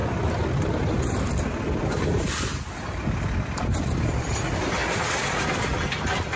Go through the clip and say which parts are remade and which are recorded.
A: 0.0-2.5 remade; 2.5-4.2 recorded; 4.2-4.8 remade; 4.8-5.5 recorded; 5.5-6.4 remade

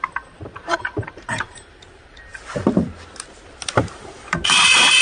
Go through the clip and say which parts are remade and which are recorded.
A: 0.0-5.0 remade